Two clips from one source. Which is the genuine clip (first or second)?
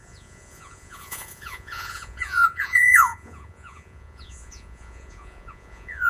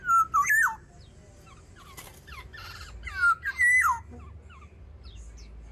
second